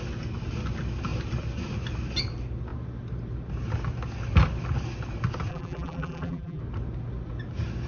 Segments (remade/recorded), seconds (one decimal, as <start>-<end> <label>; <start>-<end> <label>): 0.0-5.5 recorded; 5.5-6.6 remade; 6.6-7.9 recorded